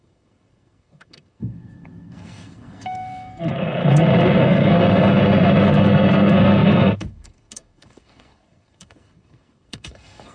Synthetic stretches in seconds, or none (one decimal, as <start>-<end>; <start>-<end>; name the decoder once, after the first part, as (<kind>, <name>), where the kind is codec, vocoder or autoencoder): 0.0-3.8 (codec, SNAC); 4.3-4.8; 5.7-10.3